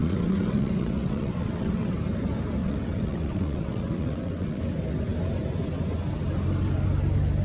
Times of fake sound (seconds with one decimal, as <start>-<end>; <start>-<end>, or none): 0.0-1.9; 2.6-4.6